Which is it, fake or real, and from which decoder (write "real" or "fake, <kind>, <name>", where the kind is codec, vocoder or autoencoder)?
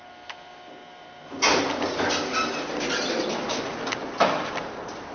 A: real